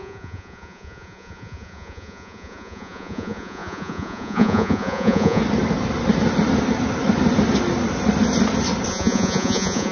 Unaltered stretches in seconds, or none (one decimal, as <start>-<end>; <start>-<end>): 5.4-8.9